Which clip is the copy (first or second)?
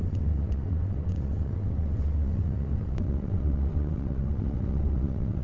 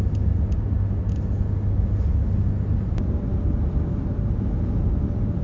first